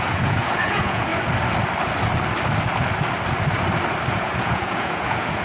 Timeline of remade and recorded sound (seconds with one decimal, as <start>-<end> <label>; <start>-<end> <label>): 0.0-1.1 remade; 1.1-4.1 recorded; 4.1-5.4 remade